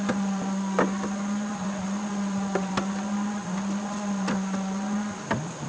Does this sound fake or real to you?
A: real